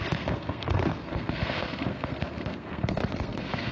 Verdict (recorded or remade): remade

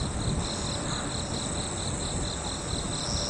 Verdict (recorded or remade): recorded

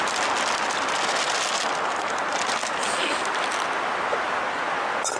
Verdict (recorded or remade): recorded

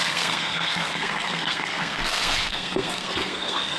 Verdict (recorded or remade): remade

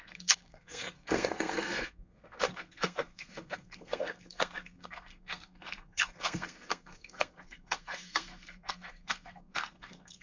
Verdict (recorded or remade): remade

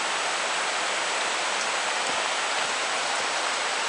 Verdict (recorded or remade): recorded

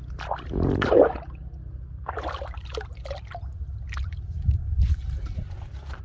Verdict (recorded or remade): recorded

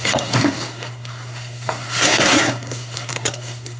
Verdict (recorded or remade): remade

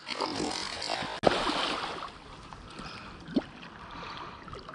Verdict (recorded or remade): recorded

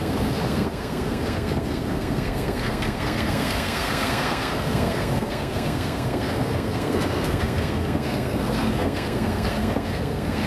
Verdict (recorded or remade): remade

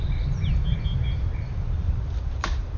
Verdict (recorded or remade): recorded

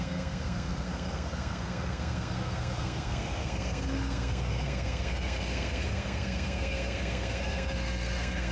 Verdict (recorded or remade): remade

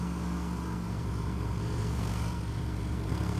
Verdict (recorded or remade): remade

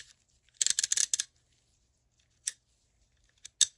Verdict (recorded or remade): recorded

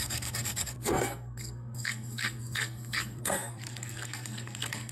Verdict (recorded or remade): remade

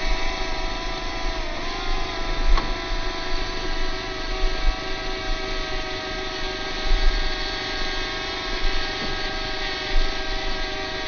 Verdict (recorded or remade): recorded